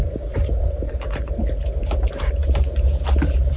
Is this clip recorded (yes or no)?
no